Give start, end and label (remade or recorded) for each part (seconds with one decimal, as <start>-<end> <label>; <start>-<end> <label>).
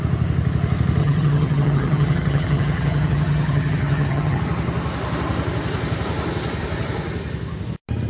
0.0-1.0 recorded; 1.0-4.4 remade; 4.4-8.1 recorded